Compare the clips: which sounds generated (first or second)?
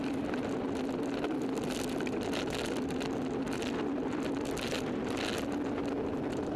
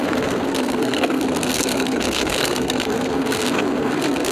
second